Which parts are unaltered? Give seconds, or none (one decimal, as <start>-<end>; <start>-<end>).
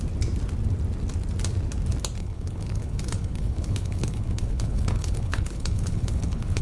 0.0-2.2